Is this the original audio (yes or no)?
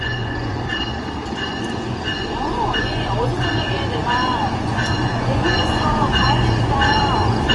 no